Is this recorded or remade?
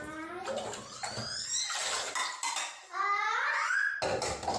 recorded